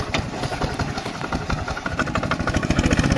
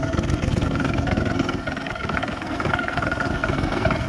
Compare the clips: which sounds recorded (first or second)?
first